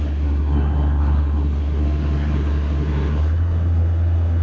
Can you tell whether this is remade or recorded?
remade